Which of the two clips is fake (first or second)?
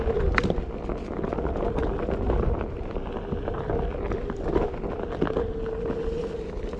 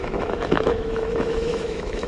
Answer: second